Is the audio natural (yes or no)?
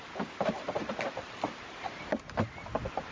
yes